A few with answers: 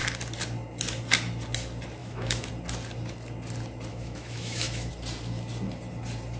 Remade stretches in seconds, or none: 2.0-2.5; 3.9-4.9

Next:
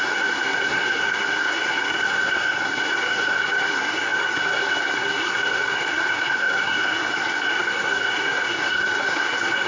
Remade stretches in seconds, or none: 0.0-9.7

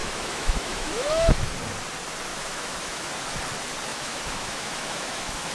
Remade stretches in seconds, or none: 0.0-1.3; 2.3-3.1; 3.9-5.5

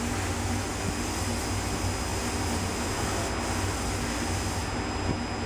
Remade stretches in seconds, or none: none

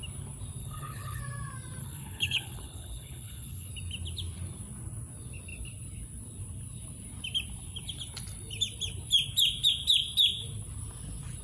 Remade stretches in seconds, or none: 0.6-1.2; 1.8-3.7

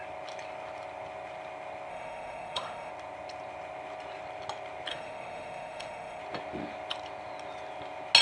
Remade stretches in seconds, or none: 1.9-2.9; 4.9-6.2